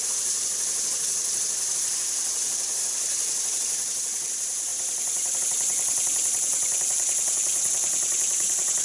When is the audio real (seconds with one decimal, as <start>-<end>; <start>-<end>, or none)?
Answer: 4.7-5.4